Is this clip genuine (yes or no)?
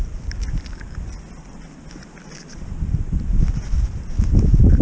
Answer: yes